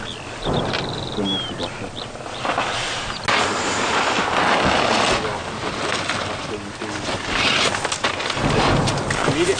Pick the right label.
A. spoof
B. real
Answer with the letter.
B